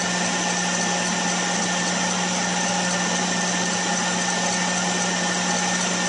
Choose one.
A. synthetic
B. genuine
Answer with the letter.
B